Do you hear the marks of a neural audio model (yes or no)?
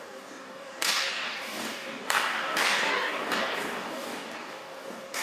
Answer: yes